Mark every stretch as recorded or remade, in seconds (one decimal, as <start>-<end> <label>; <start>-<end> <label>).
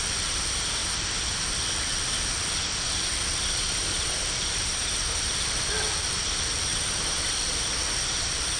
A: 0.0-3.3 recorded; 3.3-5.3 remade; 5.3-6.7 recorded; 6.7-7.3 remade; 7.3-8.6 recorded